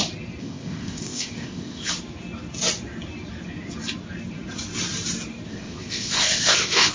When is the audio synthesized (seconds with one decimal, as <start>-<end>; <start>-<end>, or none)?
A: 0.4-1.9; 5.5-6.9